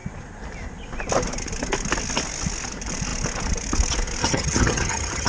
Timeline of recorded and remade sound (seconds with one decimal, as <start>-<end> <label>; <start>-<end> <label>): 0.0-4.2 recorded; 4.2-5.3 remade